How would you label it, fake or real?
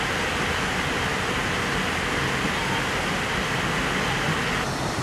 real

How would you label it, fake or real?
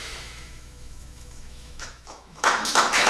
fake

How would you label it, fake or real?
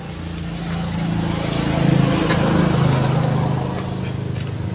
real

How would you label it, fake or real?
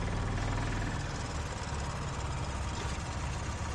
real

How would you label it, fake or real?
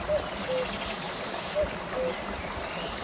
real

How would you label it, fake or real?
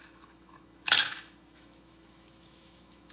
fake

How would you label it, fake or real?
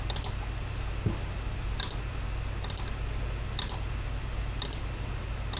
real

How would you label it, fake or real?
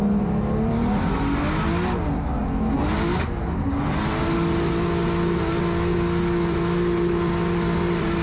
real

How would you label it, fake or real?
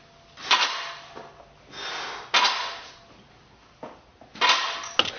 real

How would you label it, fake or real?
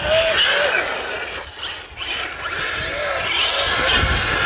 real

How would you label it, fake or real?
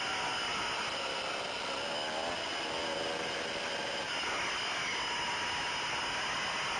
real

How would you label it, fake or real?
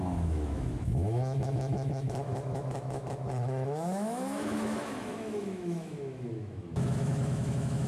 fake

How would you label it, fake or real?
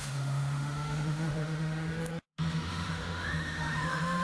fake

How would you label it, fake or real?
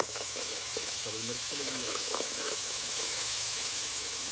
fake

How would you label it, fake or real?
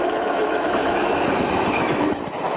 fake